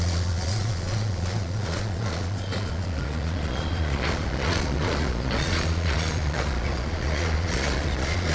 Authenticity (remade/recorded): remade